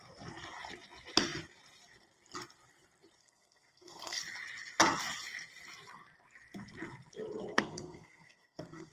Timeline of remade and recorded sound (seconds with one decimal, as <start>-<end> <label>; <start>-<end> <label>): 0.0-3.2 recorded; 3.2-4.2 remade; 4.2-7.5 recorded; 7.5-8.9 remade